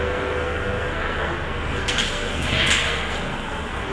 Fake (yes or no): yes